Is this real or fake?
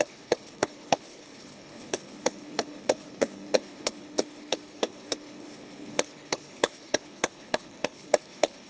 fake